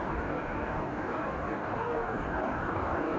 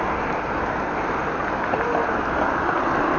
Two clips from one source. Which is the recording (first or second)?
second